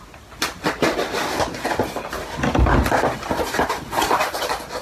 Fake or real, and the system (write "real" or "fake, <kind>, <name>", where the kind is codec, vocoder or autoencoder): real